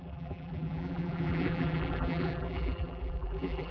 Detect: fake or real fake